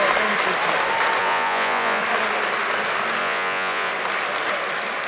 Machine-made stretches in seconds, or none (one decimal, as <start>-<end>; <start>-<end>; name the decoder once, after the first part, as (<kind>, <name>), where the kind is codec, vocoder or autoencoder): 1.2-2.0 (vocoder, Vocos); 3.2-3.9